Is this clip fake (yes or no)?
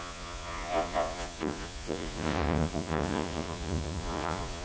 yes